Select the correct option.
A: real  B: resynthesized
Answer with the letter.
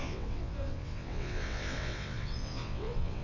B